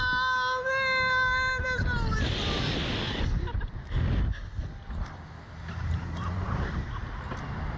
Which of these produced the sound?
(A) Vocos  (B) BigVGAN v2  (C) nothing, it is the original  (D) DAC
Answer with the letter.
C